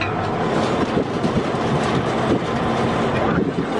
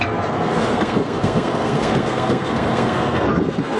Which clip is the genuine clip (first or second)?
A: first